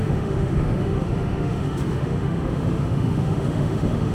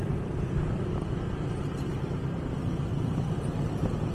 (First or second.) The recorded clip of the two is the second